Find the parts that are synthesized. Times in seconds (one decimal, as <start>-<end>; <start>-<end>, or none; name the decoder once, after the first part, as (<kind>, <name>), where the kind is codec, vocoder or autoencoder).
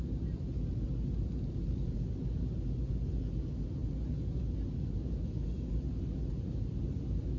none